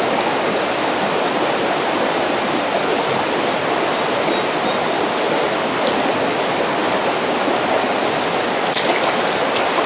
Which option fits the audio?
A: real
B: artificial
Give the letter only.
A